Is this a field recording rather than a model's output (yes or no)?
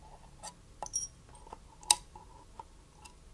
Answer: yes